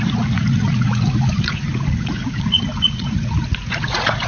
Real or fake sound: fake